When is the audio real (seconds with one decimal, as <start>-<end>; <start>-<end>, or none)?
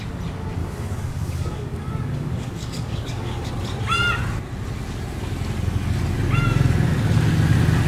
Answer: 0.0-0.6; 3.5-7.9